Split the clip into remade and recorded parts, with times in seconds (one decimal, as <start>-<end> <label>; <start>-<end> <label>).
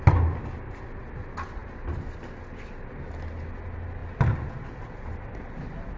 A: 0.0-6.0 recorded